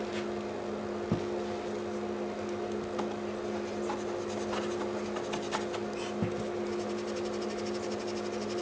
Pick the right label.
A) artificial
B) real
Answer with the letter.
B